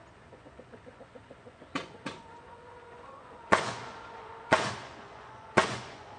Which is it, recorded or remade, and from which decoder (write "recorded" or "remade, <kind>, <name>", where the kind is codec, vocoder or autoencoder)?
remade, vocoder, Vocos